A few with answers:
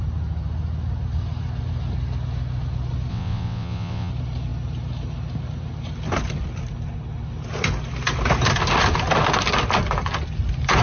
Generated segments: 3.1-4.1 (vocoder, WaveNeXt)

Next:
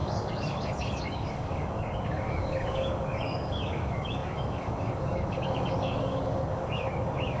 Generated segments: 0.0-7.4 (codec, DAC)

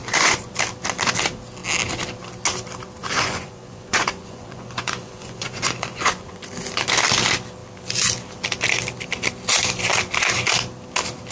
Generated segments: 0.0-0.5 (vocoder, Vocos); 3.0-6.5

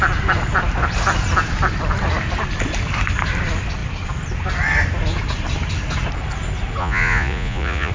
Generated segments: 6.8-7.9 (vocoder, Vocos)

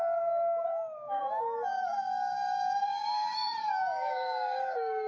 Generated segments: 0.7-1.2 (codec, DAC); 1.8-5.1